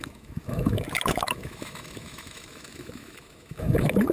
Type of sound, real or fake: fake